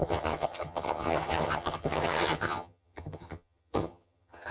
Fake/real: fake